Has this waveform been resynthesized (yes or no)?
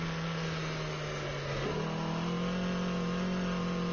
no